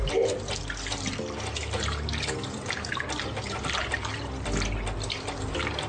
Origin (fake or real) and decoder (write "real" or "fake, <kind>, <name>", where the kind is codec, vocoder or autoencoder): real